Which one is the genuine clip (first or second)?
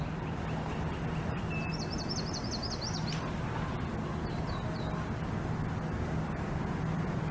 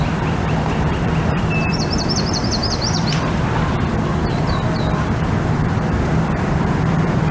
first